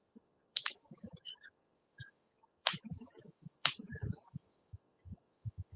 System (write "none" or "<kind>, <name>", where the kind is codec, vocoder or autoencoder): autoencoder, DAC-VAE